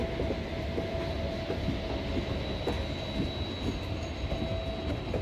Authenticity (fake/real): real